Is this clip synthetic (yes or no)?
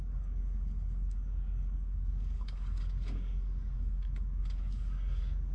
yes